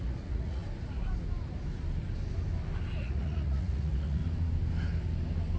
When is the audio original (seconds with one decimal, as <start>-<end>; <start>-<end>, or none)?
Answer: 0.6-3.0; 4.2-5.6